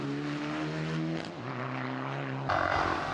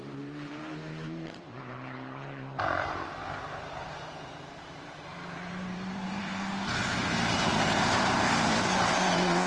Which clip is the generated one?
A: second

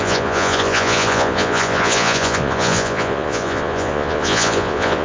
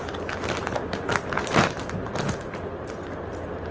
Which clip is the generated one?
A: first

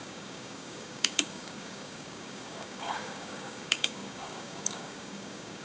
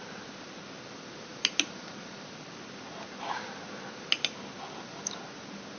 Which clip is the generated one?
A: first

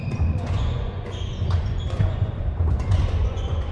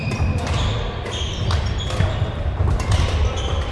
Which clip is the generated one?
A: first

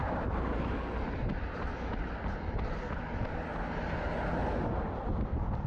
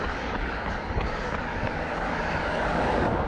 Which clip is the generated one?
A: second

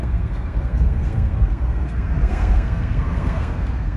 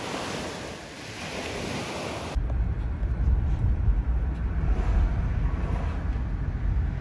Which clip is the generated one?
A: first